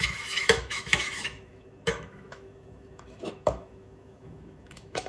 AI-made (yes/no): yes